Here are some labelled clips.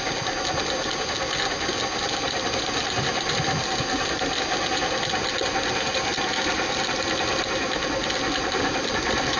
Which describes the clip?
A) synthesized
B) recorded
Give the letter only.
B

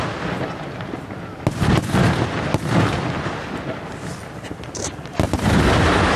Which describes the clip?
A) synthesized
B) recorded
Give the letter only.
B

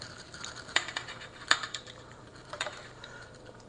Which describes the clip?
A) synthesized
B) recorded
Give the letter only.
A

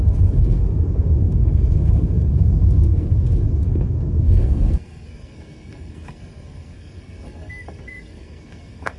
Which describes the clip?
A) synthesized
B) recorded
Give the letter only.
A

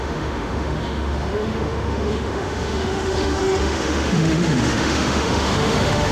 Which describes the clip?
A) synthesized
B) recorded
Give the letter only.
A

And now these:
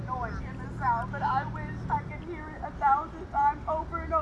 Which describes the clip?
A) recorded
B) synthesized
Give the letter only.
A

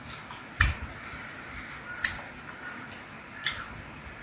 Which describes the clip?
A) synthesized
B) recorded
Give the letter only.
B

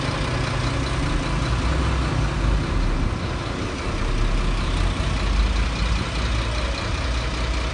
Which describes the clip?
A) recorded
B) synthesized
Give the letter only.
A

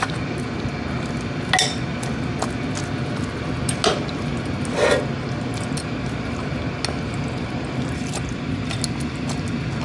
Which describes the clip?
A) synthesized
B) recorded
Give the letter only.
B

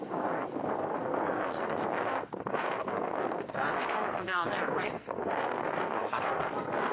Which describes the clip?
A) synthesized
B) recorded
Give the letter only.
A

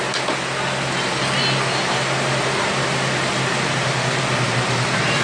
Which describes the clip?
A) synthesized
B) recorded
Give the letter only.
B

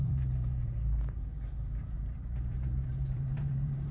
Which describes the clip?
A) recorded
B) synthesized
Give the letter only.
B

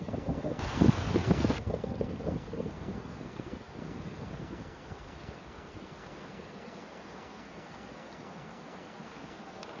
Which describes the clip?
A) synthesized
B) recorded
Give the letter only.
A